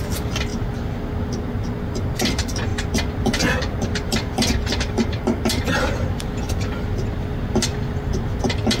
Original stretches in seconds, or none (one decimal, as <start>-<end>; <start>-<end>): 0.0-8.8